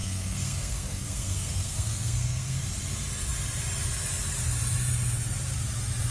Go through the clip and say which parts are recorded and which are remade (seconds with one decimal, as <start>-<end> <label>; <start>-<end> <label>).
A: 0.0-2.6 remade; 2.6-6.1 recorded